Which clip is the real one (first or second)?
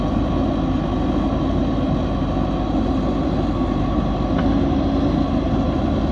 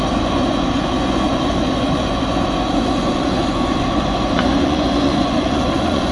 first